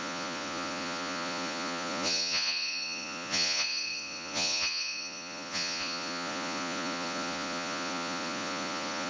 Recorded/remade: remade